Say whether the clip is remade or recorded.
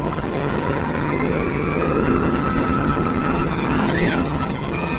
remade